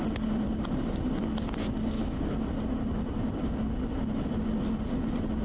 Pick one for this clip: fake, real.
fake